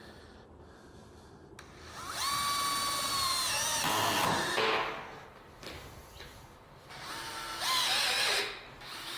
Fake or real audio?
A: real